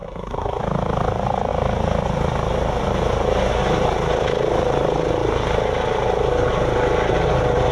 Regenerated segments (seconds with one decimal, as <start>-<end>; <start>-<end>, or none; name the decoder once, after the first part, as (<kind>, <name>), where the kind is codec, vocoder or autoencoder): 0.0-0.6 (codec, SNAC)